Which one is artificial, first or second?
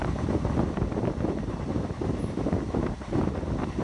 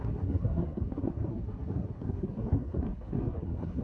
second